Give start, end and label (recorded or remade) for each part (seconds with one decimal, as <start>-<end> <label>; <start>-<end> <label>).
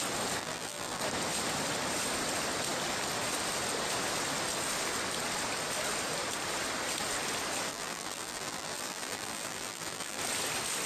0.0-0.4 recorded; 0.4-1.0 remade; 1.0-7.7 recorded; 7.7-10.2 remade; 10.2-10.9 recorded